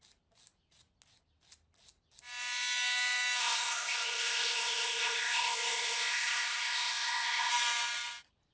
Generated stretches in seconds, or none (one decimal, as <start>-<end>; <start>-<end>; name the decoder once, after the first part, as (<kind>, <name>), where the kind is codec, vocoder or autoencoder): 3.4-7.5 (codec, ZipCodec)